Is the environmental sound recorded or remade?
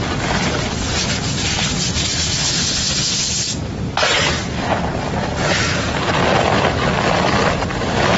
recorded